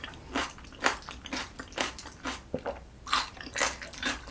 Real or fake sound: real